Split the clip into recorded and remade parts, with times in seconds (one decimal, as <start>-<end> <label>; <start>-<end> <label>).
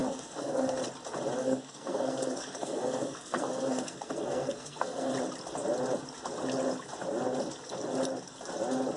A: 0.0-0.8 remade; 0.8-1.4 recorded; 1.4-5.1 remade; 5.1-9.0 recorded